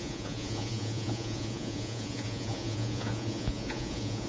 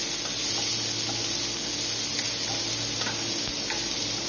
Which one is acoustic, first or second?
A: second